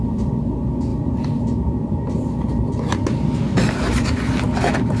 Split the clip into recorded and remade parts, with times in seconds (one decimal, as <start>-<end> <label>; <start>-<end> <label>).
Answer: 0.0-5.0 recorded